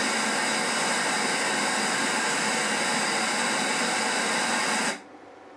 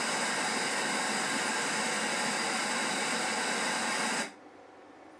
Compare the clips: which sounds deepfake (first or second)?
second